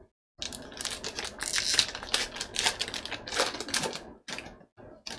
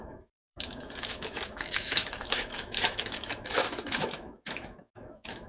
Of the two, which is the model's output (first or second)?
second